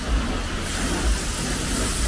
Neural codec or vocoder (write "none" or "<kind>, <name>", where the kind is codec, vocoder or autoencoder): none